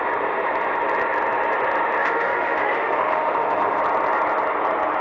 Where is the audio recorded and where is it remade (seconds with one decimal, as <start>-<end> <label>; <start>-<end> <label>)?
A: 0.0-2.0 recorded; 2.0-3.8 remade; 3.8-5.0 recorded